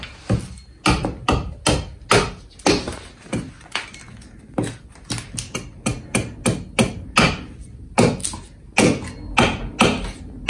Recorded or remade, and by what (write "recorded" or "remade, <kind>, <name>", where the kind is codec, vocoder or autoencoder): recorded